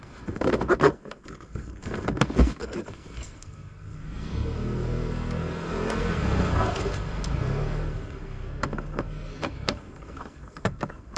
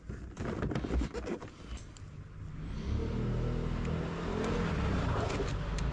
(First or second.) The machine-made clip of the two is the first